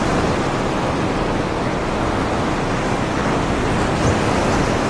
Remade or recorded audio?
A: recorded